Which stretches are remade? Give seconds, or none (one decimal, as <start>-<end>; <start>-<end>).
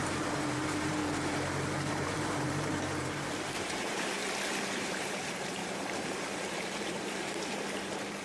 0.0-1.0; 1.9-4.2; 4.8-8.2